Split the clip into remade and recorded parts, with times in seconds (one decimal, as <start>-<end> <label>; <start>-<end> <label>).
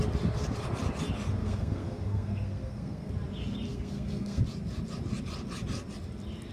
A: 0.0-1.4 recorded; 1.4-3.1 remade; 3.1-3.7 recorded; 3.7-4.4 remade; 4.4-6.5 recorded